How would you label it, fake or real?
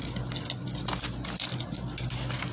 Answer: real